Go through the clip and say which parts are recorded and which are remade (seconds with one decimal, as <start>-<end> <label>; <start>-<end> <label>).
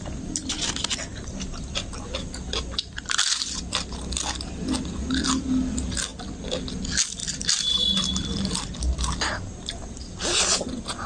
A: 0.0-1.1 recorded; 1.1-3.6 remade; 3.6-6.1 recorded; 6.1-6.6 remade; 6.6-7.2 recorded; 7.2-8.8 remade; 8.8-11.1 recorded